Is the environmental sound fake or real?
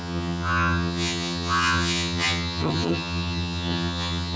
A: fake